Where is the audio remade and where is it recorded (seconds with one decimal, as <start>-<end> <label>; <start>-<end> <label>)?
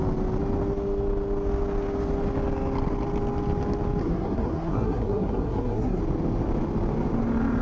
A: 0.0-4.0 recorded; 4.0-6.0 remade; 6.0-7.6 recorded